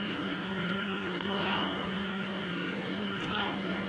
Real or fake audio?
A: fake